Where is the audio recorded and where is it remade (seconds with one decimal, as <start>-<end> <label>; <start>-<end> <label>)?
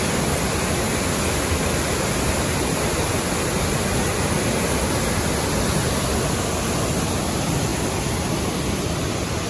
0.0-9.5 recorded